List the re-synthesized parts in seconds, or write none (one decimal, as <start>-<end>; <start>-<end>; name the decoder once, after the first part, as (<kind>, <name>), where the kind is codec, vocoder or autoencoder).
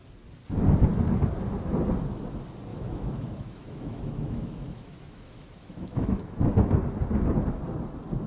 2.7-6.4 (autoencoder, DAC-VAE)